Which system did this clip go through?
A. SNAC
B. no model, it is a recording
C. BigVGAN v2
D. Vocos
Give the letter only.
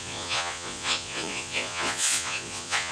D